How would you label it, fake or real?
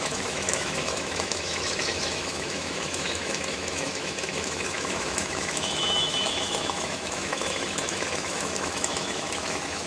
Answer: fake